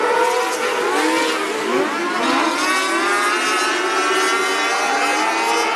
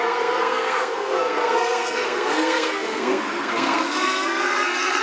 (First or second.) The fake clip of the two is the second